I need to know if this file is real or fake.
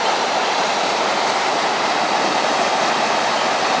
fake